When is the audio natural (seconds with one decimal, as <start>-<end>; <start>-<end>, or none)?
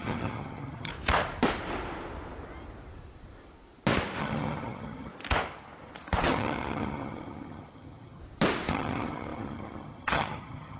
0.9-4.2; 5.1-6.2; 8.2-8.7